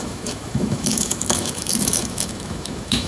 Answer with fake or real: fake